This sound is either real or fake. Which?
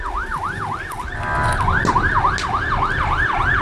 real